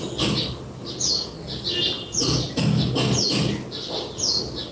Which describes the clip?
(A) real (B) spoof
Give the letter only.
A